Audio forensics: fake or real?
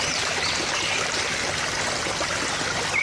real